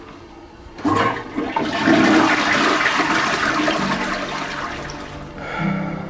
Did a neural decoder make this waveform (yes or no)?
no